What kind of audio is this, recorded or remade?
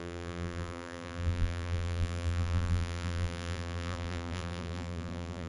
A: remade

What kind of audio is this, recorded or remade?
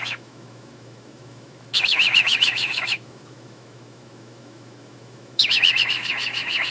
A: remade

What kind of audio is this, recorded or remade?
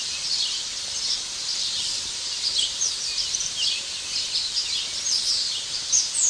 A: remade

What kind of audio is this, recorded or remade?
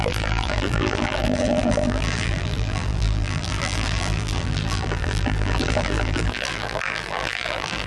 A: remade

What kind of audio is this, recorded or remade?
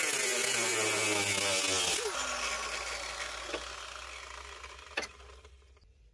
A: recorded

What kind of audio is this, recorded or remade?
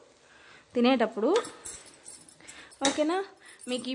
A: recorded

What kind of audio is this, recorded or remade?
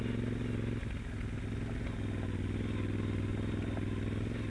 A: recorded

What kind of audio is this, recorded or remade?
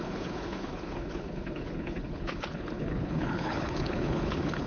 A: remade